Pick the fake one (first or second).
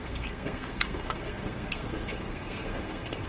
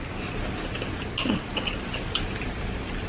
first